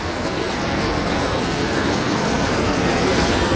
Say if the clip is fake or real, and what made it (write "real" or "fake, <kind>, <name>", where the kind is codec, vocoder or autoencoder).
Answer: fake, codec, SNAC